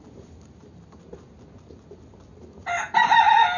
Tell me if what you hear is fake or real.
real